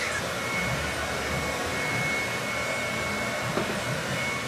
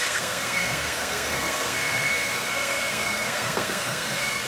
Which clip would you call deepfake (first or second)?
second